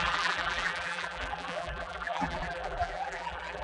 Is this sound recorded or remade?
remade